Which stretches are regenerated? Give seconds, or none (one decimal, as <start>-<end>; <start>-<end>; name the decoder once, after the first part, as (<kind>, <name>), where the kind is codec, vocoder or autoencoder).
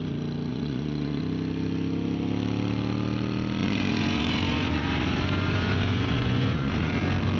0.5-1.2 (vocoder, Vocos); 3.6-6.9